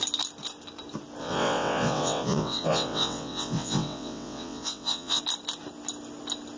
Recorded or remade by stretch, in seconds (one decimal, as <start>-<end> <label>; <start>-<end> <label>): 0.0-1.2 recorded; 1.2-5.2 remade; 5.2-6.6 recorded